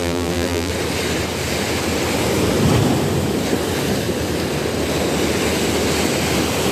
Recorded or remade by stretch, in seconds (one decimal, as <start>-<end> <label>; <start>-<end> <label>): 0.0-0.7 remade; 0.7-6.7 recorded